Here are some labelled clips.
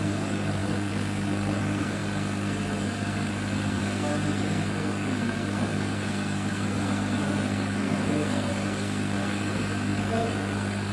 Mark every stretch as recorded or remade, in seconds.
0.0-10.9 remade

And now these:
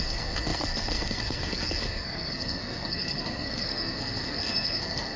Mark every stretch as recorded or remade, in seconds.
0.0-5.2 remade